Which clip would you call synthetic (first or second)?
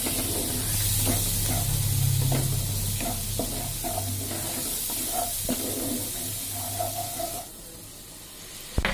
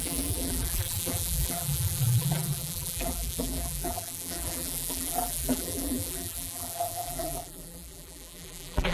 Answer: second